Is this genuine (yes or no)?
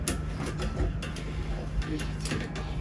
yes